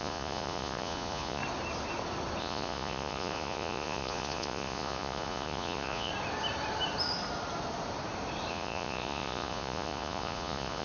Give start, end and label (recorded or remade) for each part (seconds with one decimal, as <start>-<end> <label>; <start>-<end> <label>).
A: 0.0-1.4 remade; 1.4-2.4 recorded; 2.4-6.1 remade; 6.1-8.5 recorded; 8.5-10.8 remade